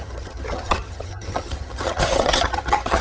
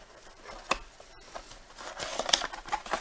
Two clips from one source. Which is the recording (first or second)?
second